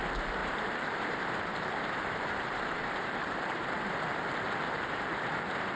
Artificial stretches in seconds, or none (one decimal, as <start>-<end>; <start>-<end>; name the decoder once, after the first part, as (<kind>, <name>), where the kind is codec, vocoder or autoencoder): 0.4-3.9 (vocoder, BigVGAN v2)